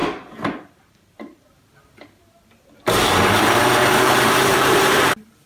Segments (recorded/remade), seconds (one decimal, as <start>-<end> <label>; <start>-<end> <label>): 0.0-1.6 remade; 1.6-4.5 recorded; 4.5-5.5 remade